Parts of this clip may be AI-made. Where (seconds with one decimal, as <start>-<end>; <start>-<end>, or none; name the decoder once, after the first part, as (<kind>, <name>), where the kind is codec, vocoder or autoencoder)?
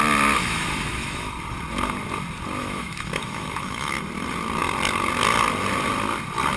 0.4-1.3 (autoencoder, DAC-VAE); 2.6-4.0